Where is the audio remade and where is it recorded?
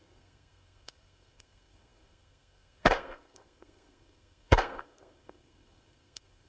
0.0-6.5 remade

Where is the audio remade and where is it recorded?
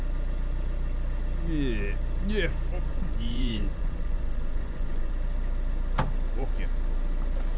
0.0-2.9 recorded; 2.9-5.1 remade; 5.1-7.6 recorded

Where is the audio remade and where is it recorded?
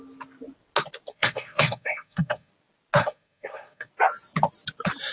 0.0-1.1 recorded; 1.1-2.5 remade; 2.5-3.0 recorded; 3.0-3.9 remade; 3.9-5.1 recorded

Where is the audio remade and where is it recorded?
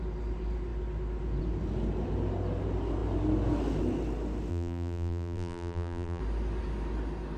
0.0-4.5 recorded; 4.5-6.2 remade; 6.2-7.4 recorded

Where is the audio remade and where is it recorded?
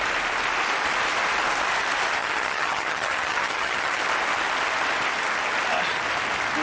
0.0-2.2 recorded; 2.2-4.0 remade; 4.0-6.6 recorded